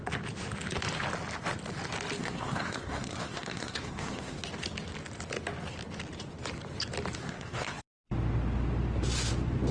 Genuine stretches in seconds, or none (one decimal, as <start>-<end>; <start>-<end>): 0.0-2.2; 4.4-7.2; 7.8-9.7